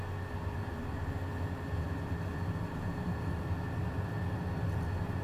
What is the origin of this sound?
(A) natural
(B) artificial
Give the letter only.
A